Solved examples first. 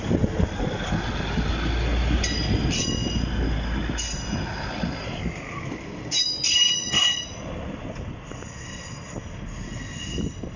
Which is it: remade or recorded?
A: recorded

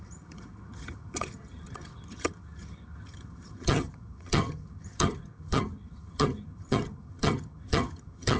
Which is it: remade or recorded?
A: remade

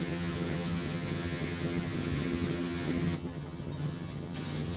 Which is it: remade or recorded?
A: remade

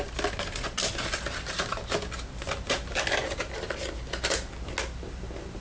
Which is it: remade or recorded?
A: recorded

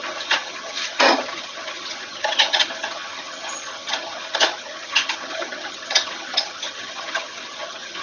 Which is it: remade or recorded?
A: remade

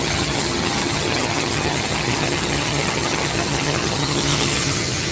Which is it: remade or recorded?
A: remade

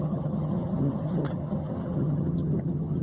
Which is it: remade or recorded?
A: remade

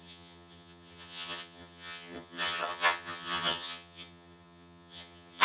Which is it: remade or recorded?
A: remade